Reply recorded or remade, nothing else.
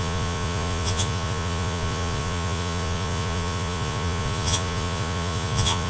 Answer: remade